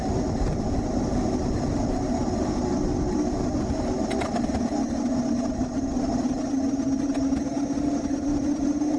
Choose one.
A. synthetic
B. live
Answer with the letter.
B